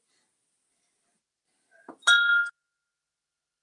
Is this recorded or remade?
recorded